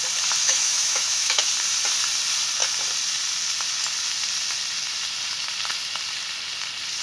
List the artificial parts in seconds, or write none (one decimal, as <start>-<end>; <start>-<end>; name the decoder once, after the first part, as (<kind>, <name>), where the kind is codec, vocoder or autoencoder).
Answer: 0.4-1.4 (autoencoder, DAC-VAE)